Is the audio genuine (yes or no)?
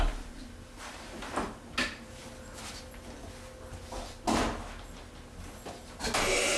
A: yes